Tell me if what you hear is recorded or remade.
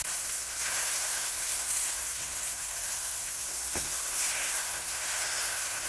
remade